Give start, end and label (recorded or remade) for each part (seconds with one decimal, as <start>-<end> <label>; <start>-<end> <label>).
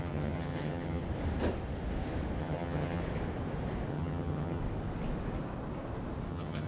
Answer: 0.0-1.0 remade; 1.0-2.4 recorded; 2.4-3.0 remade; 3.0-3.9 recorded; 3.9-4.6 remade; 4.6-6.3 recorded; 6.3-6.7 remade